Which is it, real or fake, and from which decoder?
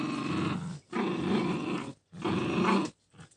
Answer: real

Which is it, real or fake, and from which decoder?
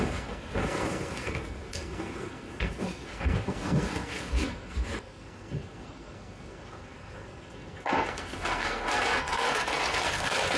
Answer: fake, codec, SNAC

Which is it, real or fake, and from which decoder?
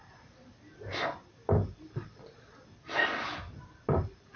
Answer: real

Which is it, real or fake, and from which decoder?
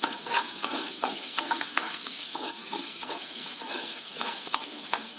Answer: fake, codec, SNAC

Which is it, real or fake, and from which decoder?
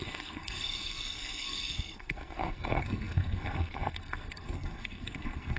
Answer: fake, codec, SNAC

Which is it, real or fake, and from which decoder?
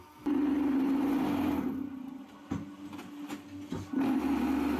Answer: real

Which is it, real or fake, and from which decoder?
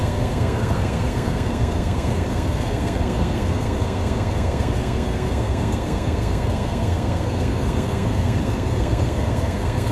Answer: fake, codec, SNAC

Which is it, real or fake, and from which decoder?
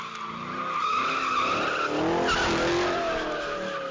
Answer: real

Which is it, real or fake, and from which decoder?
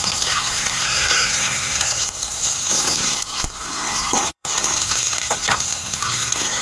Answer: fake, codec, SNAC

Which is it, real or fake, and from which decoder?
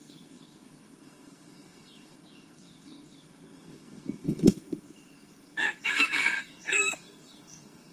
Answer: fake, codec, SNAC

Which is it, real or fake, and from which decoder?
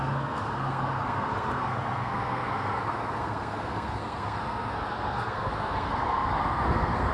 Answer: fake, codec, SNAC